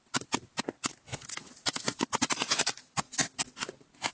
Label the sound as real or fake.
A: real